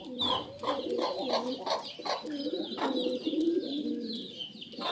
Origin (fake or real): real